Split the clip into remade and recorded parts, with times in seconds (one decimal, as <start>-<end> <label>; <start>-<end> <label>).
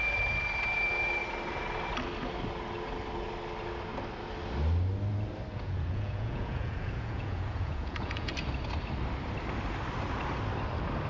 0.0-5.5 recorded; 5.5-8.3 remade; 8.3-11.1 recorded